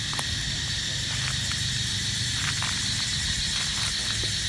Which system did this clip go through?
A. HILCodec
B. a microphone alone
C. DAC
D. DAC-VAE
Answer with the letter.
B